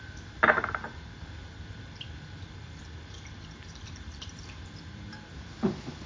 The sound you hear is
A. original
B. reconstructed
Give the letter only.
B